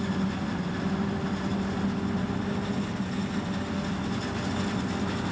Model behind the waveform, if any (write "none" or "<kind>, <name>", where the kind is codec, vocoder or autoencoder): none